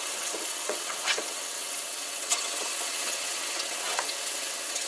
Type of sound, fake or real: fake